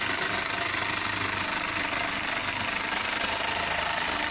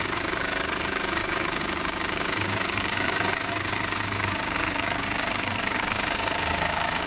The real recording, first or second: first